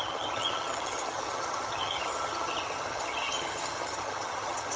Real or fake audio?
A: fake